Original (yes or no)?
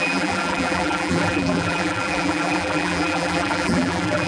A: no